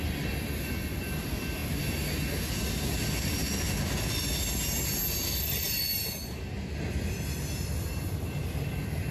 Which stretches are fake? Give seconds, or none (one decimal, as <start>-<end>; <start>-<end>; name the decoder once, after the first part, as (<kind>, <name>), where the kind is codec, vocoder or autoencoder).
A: none